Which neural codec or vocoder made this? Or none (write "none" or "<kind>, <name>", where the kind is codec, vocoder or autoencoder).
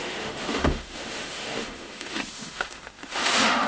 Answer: autoencoder, DAC-VAE